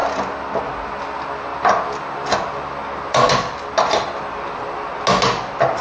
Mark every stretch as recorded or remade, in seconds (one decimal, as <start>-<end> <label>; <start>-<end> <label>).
0.0-0.6 remade; 0.6-5.8 recorded